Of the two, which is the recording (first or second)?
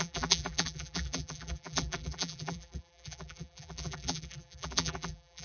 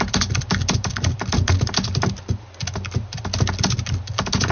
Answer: second